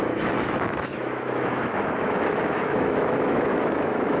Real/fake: fake